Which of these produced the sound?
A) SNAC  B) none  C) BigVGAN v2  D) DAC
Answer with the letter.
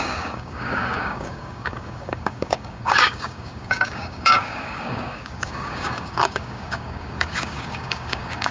D